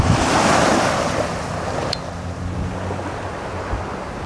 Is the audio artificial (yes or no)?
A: no